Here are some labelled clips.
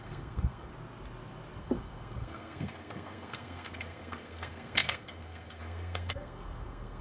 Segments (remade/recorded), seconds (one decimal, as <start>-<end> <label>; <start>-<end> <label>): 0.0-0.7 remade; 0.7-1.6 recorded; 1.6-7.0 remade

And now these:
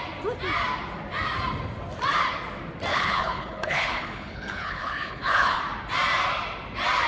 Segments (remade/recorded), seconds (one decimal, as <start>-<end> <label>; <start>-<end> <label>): 0.0-2.9 recorded; 2.9-5.6 remade; 5.6-7.1 recorded

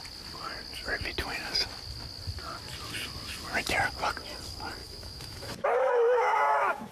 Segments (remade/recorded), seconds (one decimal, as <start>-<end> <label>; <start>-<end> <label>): 0.0-4.8 recorded; 4.8-6.9 remade

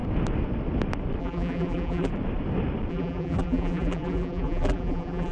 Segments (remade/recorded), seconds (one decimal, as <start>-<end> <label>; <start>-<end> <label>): 0.0-1.2 recorded; 1.2-2.1 remade; 2.1-2.9 recorded; 2.9-5.3 remade

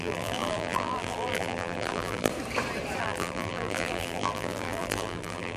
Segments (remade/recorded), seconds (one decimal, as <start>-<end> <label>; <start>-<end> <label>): 0.0-2.3 remade; 2.3-3.0 recorded; 3.0-5.6 remade

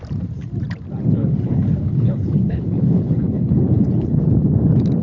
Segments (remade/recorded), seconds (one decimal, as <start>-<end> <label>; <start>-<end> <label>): 0.0-1.2 recorded; 1.2-4.2 remade; 4.2-5.0 recorded